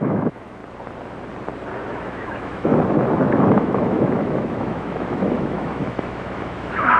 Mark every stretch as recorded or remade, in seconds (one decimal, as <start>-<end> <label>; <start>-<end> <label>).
0.0-0.6 remade; 0.6-1.9 recorded; 1.9-2.7 remade; 2.7-3.5 recorded; 3.5-7.0 remade